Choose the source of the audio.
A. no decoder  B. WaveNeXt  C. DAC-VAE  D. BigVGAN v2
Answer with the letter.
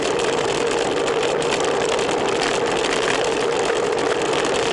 D